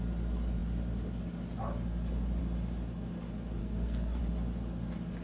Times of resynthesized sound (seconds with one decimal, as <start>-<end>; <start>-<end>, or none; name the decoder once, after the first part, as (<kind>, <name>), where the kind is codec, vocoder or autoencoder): 3.6-4.2 (codec, SNAC)